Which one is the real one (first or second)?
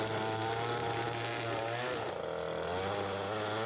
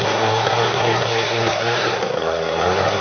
first